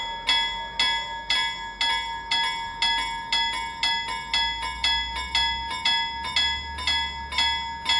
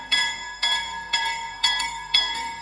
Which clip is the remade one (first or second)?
second